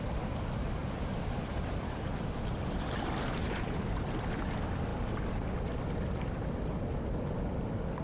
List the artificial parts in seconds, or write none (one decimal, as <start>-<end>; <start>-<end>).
0.8-2.4